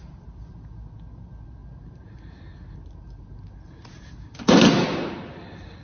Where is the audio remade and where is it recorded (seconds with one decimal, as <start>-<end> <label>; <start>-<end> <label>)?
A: 0.0-5.8 recorded